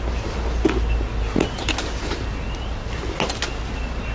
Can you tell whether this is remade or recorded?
recorded